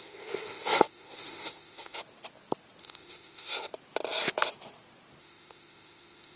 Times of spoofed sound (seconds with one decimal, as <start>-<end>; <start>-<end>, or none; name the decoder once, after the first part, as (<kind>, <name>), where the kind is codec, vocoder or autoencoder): 0.0-2.0 (autoencoder, DAC-VAE); 2.8-3.7; 5.2-6.4